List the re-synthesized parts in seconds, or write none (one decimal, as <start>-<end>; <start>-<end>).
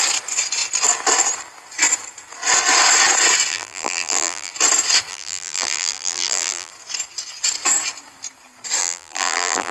3.5-4.5; 5.1-6.7; 8.8-9.7